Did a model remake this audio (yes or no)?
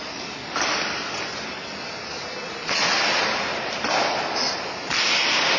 no